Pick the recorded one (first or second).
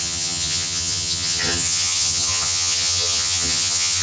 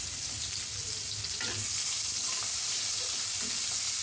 second